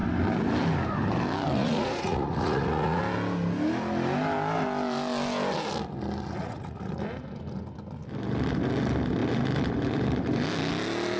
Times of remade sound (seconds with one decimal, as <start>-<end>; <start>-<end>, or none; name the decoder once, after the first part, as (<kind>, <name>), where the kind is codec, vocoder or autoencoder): 1.6-3.0 (vocoder, Vocos); 6.4-6.9